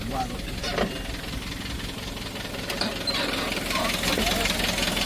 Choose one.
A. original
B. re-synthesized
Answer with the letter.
A